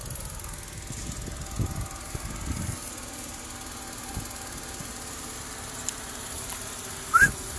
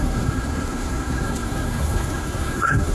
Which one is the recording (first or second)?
first